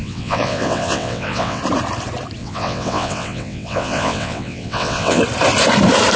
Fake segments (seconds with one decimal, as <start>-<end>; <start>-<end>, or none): 0.0-1.6; 2.4-5.2